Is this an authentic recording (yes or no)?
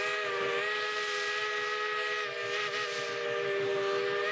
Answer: yes